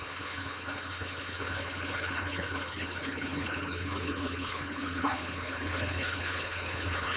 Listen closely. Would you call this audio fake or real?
fake